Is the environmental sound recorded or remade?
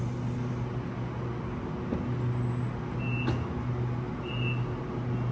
recorded